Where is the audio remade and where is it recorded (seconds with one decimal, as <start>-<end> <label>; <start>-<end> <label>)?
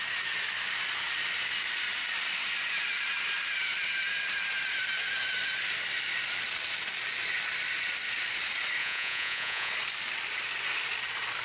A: 0.0-8.8 recorded; 8.8-9.7 remade; 9.7-11.4 recorded